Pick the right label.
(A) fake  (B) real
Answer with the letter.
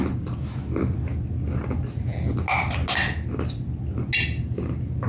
B